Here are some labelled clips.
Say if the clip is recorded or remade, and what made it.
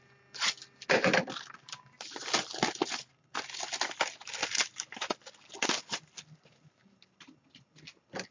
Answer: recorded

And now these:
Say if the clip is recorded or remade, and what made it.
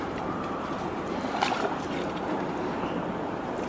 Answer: remade, vocoder, BigVGAN v2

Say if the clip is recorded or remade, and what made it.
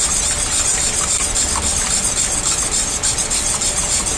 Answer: recorded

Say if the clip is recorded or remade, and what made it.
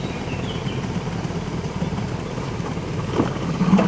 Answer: remade, vocoder, BigVGAN v2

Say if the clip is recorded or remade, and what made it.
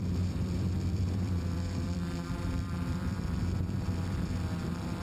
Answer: remade, vocoder, BigVGAN v2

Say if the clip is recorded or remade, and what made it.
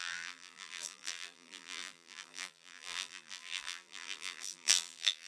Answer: remade, vocoder, BigVGAN v2